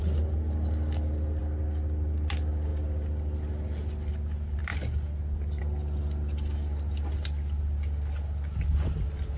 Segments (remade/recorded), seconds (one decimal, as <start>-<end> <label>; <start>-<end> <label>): 0.0-9.4 recorded

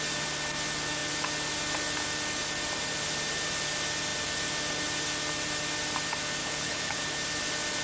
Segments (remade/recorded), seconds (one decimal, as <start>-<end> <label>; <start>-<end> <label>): 0.0-6.4 recorded; 6.4-7.0 remade; 7.0-7.8 recorded

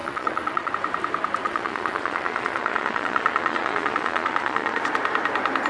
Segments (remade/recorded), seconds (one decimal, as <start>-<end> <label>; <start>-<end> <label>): 0.0-0.7 remade; 0.7-1.4 recorded; 1.4-4.8 remade; 4.8-5.7 recorded

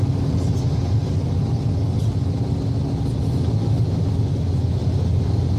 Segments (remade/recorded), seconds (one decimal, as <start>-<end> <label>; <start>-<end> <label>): 0.0-5.6 recorded

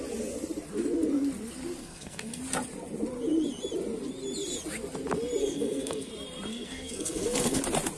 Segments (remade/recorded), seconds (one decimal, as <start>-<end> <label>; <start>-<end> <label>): 0.0-1.8 recorded; 1.8-2.4 remade; 2.4-5.4 recorded; 5.4-6.1 remade; 6.1-6.5 recorded; 6.5-7.6 remade; 7.6-8.0 recorded

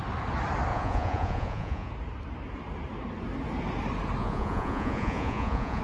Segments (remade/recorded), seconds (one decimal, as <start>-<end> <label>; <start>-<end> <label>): 0.0-0.7 recorded; 0.7-1.9 remade; 1.9-4.2 recorded; 4.2-5.8 remade

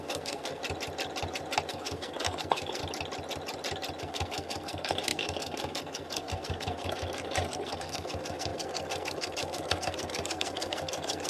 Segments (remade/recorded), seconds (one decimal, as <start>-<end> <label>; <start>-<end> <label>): 0.0-0.6 remade; 0.6-1.7 recorded; 1.7-2.8 remade; 2.8-4.0 recorded; 4.0-11.3 remade

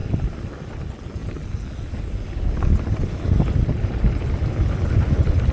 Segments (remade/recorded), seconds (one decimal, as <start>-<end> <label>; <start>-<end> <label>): 0.0-5.5 recorded